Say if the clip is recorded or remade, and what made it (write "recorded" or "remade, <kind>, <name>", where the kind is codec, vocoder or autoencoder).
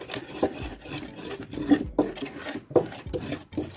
recorded